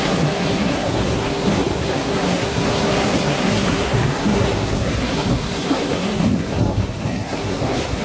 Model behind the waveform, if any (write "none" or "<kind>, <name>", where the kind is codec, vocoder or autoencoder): codec, SNAC